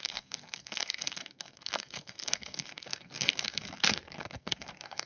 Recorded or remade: remade